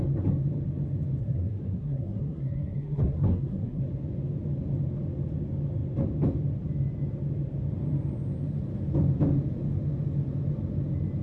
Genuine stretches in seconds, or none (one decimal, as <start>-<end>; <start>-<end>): 0.0-1.2; 3.8-11.2